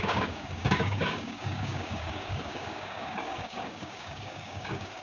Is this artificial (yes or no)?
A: yes